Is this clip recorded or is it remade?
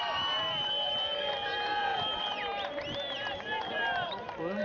recorded